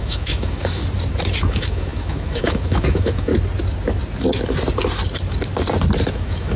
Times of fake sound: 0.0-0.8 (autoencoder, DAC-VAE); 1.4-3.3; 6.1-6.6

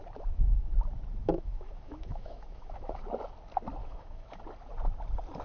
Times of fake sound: 1.2-3.0 (autoencoder, DAC-VAE); 3.8-4.4

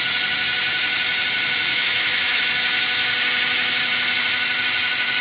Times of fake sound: 1.7-2.4 (autoencoder, DAC-VAE)

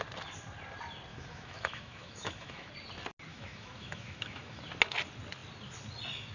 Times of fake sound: 1.1-2.7 (autoencoder, DAC-VAE); 3.3-4.6

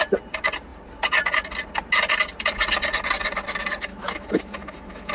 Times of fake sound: 3.9-5.1 (autoencoder, DAC-VAE)

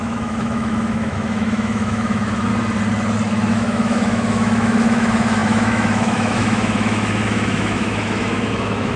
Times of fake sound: 0.0-2.5 (autoencoder, DAC-VAE); 3.5-9.0